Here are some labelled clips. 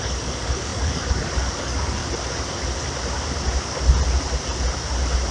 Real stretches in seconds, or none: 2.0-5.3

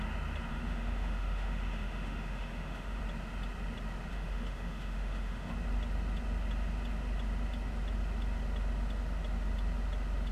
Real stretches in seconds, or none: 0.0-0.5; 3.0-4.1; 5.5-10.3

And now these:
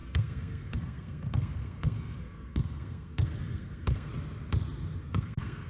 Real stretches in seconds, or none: 4.1-5.0

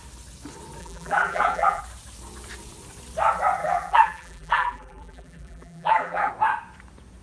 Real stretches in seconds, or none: 0.0-0.8; 1.8-3.6; 6.3-7.2

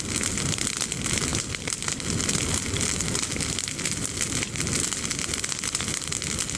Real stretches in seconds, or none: 0.0-6.6

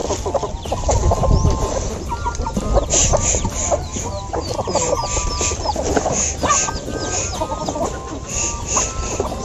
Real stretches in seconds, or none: 0.0-9.4

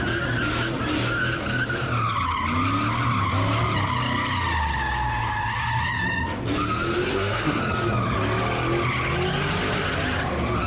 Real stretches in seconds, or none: 0.0-7.1; 7.6-10.7

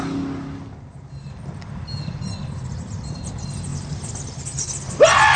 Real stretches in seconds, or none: 0.0-5.4